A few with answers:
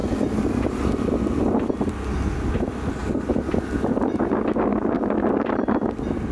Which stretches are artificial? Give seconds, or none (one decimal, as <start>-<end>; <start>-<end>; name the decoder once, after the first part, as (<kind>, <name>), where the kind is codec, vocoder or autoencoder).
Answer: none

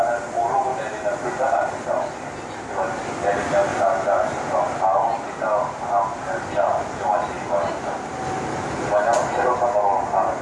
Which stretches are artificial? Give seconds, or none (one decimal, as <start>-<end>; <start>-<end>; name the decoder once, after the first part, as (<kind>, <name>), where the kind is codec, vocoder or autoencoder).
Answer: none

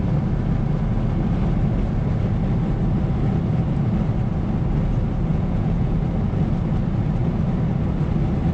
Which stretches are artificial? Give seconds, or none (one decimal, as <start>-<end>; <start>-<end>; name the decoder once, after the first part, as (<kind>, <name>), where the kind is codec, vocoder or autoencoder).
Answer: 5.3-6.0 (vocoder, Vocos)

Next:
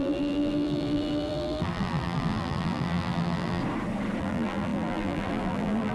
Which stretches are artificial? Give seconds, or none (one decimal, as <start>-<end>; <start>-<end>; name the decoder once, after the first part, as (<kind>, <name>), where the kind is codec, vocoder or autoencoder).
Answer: 0.0-3.6 (vocoder, BigVGAN v2); 4.2-5.9

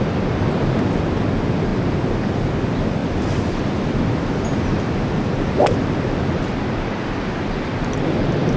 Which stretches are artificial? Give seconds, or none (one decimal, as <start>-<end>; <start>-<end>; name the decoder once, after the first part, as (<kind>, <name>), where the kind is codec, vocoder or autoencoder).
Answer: none

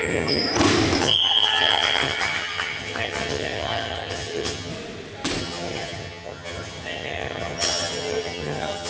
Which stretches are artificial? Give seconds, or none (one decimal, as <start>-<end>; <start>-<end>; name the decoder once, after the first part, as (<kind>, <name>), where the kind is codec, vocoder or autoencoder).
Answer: 0.0-0.4 (vocoder, HiFi-GAN); 1.0-4.7; 5.4-8.9